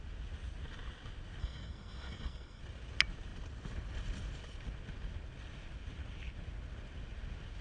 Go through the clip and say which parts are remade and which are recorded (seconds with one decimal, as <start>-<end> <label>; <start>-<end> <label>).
0.0-1.4 recorded; 1.4-2.6 remade; 2.6-7.6 recorded